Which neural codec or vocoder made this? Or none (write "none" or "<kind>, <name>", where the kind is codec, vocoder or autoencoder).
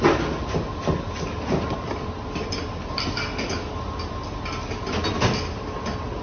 none